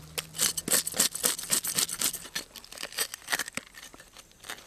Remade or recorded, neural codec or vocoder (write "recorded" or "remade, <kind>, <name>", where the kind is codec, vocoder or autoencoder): recorded